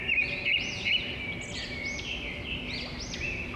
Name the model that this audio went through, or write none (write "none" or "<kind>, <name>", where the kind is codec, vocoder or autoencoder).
none